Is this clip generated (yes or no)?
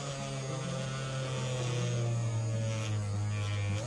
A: no